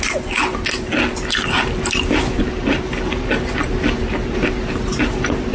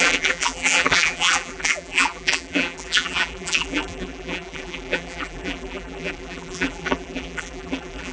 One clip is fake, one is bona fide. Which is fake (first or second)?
second